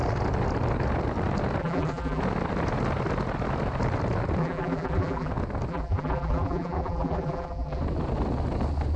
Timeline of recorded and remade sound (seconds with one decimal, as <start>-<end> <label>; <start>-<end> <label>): 0.0-1.6 recorded; 1.6-2.2 remade; 2.2-4.4 recorded; 4.4-5.3 remade; 5.3-5.7 recorded; 5.7-7.8 remade; 7.8-9.0 recorded